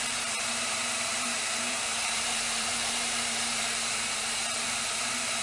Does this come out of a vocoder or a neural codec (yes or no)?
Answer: yes